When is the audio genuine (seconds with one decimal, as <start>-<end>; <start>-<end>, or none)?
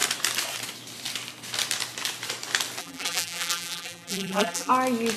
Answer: 0.0-2.8; 4.7-5.2